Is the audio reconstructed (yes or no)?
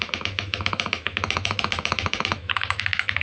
yes